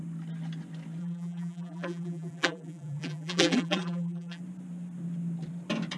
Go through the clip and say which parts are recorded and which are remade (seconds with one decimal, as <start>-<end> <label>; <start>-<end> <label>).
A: 0.0-1.0 recorded; 1.0-4.4 remade; 4.4-6.0 recorded